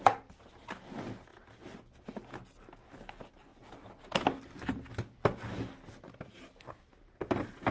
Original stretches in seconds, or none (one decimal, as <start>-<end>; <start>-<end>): 0.0-7.7